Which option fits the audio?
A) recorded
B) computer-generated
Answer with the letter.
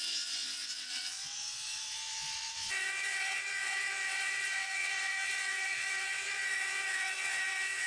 B